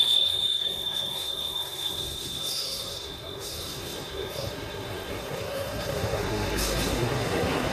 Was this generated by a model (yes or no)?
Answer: yes